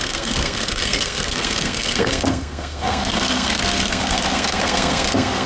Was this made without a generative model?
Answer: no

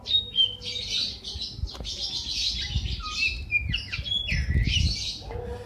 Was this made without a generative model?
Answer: yes